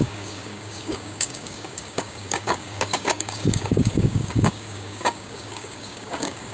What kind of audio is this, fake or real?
fake